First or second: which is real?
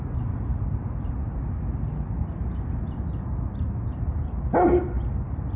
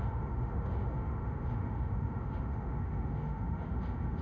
first